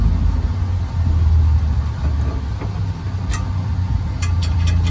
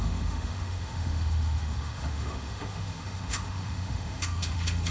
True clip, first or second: first